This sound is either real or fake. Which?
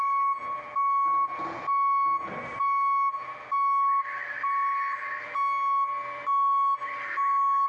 real